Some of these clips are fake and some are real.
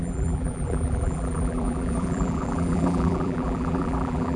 fake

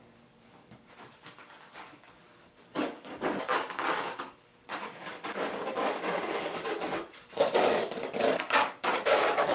fake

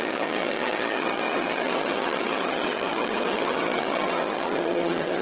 fake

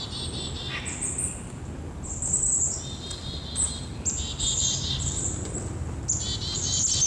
real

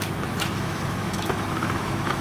fake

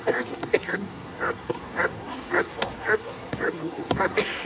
fake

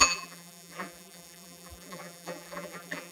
fake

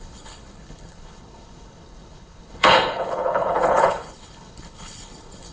fake